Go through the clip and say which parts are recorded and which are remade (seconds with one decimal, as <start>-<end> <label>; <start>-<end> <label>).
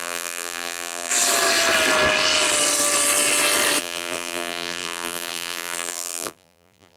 0.0-1.1 remade; 1.1-3.8 recorded; 3.8-7.0 remade